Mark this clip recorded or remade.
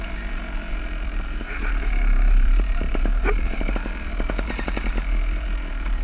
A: remade